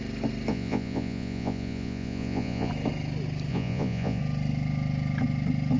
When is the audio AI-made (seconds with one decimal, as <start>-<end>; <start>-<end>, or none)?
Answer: 0.5-2.7; 3.5-4.2